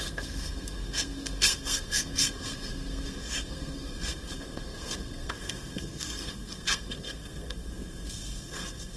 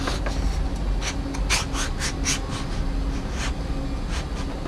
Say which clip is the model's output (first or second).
first